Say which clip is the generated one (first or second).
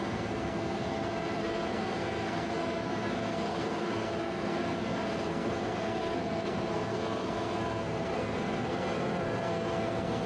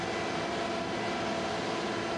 first